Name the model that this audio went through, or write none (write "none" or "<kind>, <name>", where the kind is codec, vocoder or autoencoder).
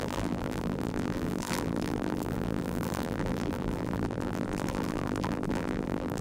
vocoder, BigVGAN v2